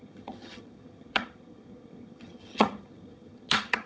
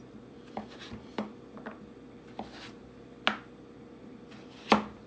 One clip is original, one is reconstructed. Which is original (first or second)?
second